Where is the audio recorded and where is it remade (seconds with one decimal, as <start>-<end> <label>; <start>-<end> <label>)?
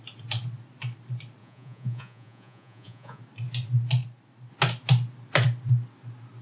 0.0-1.4 recorded; 1.4-3.2 remade; 3.2-6.4 recorded